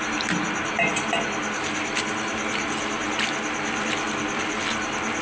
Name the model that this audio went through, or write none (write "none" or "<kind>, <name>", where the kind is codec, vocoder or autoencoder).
none